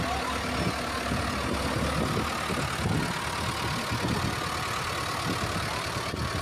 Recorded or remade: recorded